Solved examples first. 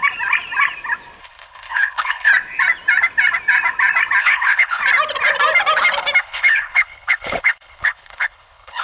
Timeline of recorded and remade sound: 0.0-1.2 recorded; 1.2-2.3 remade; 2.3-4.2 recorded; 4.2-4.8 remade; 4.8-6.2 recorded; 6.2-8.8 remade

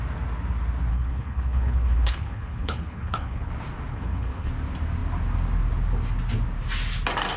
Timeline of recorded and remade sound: 0.0-0.9 recorded; 0.9-3.5 remade; 3.5-3.9 recorded; 3.9-4.5 remade; 4.5-7.4 recorded

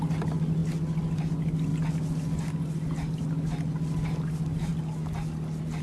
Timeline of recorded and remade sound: 0.0-5.8 recorded

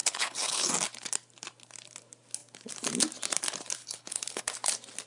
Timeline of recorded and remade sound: 0.0-0.7 remade; 0.7-3.8 recorded; 3.8-4.4 remade; 4.4-5.1 recorded

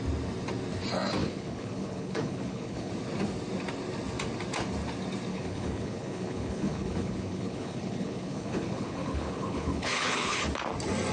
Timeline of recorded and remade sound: 0.0-1.2 recorded; 1.2-2.9 remade; 2.9-5.3 recorded; 5.3-10.4 remade; 10.4-11.1 recorded